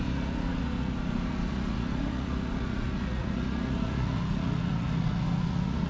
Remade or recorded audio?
remade